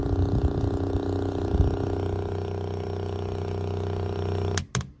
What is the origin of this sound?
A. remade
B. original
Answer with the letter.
B